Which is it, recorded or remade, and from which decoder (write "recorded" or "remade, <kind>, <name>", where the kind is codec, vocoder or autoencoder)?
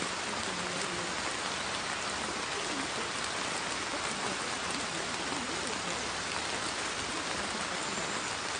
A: recorded